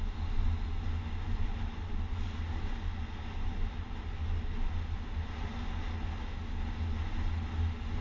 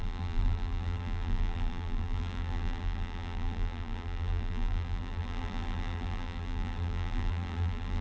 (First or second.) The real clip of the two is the first